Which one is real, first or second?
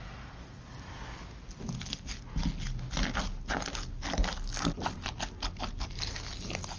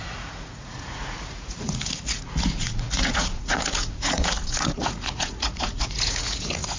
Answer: first